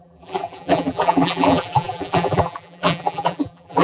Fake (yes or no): yes